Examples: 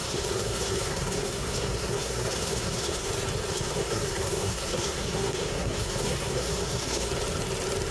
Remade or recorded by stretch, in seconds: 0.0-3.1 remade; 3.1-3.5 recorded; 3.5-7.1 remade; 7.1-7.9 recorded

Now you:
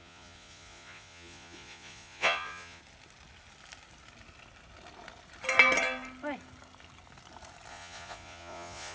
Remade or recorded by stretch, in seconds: 0.0-2.8 remade; 2.8-7.7 recorded; 7.7-8.9 remade

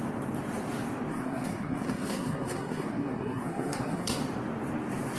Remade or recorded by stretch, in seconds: 0.0-1.1 recorded; 1.1-4.2 remade; 4.2-5.2 recorded